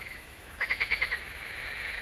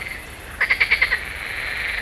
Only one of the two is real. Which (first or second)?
second